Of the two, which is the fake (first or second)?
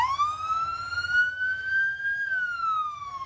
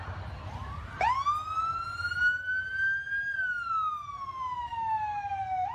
first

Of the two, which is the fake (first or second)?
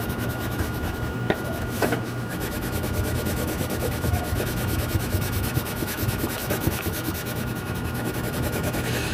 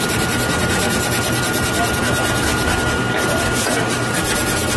first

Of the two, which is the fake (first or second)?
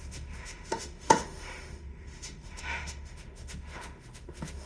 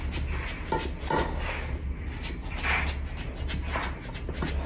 first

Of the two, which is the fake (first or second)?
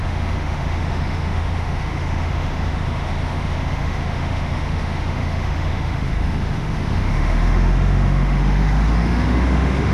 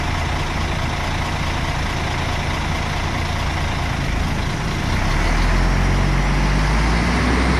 first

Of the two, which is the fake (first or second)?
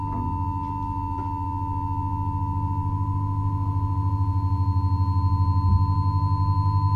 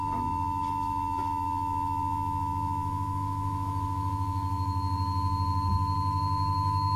second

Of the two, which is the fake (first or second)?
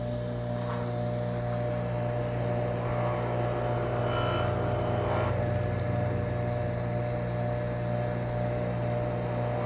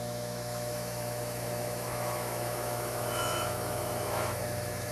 second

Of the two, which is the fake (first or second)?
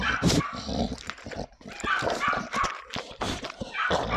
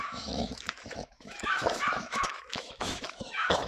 second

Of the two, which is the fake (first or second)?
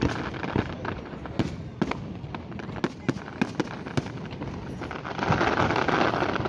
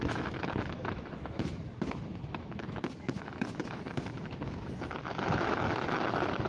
second